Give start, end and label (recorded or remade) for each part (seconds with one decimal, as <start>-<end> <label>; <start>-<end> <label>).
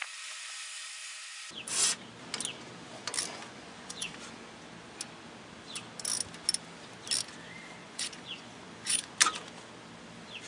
0.0-3.3 recorded; 3.3-4.1 remade; 4.1-7.8 recorded; 7.8-9.1 remade; 9.1-10.5 recorded